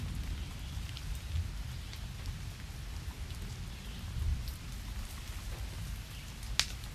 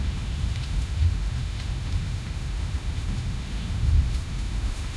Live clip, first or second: first